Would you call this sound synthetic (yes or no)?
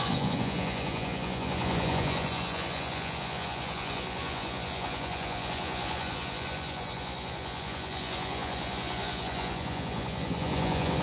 yes